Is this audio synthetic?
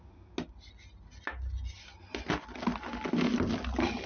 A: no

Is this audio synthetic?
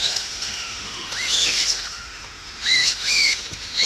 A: yes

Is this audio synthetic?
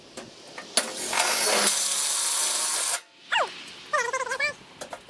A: no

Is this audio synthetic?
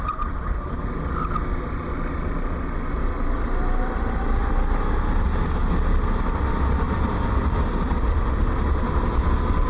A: no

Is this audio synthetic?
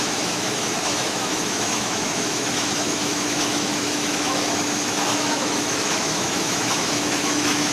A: yes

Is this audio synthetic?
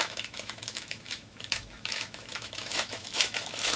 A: yes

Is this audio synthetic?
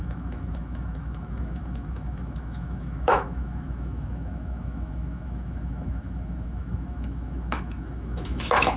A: yes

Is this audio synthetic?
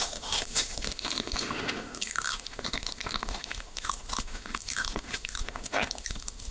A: yes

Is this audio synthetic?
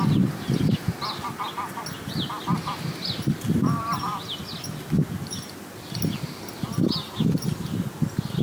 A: no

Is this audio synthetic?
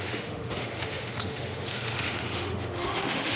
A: yes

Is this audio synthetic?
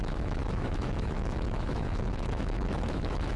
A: yes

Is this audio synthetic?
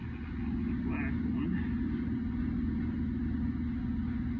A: no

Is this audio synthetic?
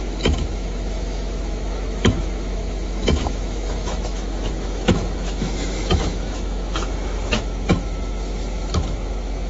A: yes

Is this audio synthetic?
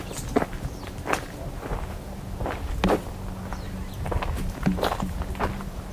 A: no